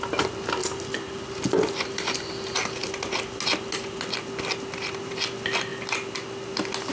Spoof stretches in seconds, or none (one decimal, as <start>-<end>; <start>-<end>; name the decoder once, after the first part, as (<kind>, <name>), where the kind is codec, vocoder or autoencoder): none